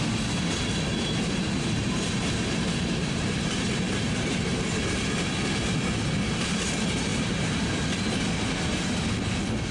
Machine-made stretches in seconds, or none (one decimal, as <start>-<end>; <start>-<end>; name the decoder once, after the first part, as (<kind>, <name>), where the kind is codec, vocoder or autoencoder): 0.9-4.6 (vocoder, BigVGAN v2); 7.1-7.7